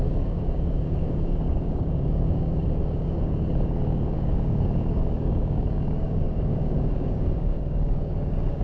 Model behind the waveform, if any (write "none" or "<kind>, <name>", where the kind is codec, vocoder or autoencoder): codec, DAC